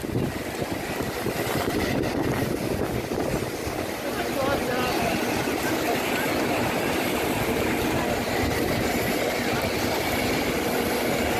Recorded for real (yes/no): yes